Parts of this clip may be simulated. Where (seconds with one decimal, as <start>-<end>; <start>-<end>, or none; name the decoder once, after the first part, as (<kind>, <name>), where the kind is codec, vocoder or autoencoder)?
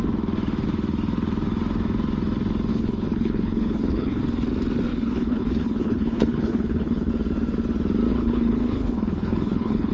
2.7-4.2 (codec, HILCodec); 4.9-7.1; 8.1-9.9